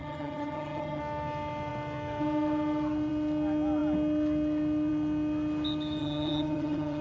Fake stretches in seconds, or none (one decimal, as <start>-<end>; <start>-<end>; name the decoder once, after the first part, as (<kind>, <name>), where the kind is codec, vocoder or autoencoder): 0.0-1.0 (vocoder, HiFi-GAN); 6.0-7.0